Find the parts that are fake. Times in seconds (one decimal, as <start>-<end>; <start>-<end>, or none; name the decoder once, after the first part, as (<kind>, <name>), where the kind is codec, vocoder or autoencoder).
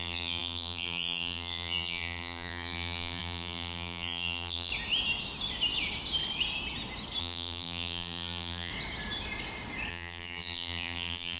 0.0-4.7 (vocoder, BigVGAN v2); 7.2-8.7; 9.9-11.4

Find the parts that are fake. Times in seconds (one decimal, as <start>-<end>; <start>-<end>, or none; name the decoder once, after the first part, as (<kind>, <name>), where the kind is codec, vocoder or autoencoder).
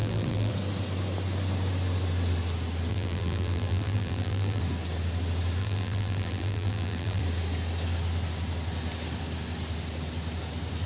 0.0-0.5 (vocoder, BigVGAN v2); 2.9-4.6; 5.6-7.2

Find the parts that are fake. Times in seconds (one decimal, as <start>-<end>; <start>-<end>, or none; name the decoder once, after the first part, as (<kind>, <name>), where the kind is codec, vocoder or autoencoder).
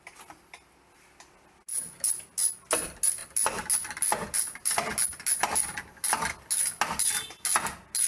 none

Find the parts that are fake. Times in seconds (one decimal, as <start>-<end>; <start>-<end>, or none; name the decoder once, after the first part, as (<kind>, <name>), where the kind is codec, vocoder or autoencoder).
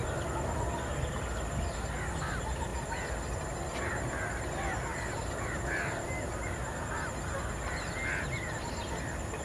none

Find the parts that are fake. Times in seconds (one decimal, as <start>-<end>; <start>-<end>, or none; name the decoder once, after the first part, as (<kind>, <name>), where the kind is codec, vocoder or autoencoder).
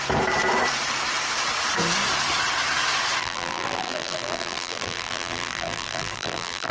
3.2-6.7 (vocoder, BigVGAN v2)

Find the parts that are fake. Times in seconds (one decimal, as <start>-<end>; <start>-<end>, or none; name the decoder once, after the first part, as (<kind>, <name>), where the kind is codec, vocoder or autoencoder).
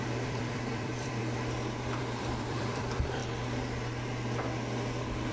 0.0-1.2 (vocoder, BigVGAN v2); 2.0-3.2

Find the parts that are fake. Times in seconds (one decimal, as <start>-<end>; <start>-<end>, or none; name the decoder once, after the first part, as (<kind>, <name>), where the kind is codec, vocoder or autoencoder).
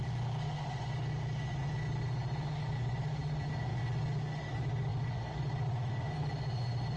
none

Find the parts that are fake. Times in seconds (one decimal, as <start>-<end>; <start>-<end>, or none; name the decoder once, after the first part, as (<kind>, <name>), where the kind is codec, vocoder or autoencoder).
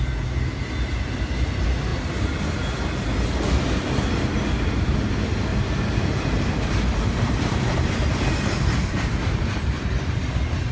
5.5-9.9 (vocoder, BigVGAN v2)